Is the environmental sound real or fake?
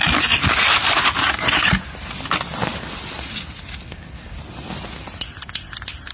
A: real